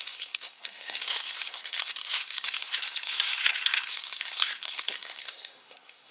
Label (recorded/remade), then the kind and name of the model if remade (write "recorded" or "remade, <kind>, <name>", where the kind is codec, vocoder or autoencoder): remade, codec, SNAC